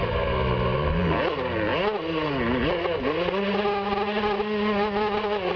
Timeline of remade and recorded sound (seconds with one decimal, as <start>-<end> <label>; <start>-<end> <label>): 0.0-5.6 recorded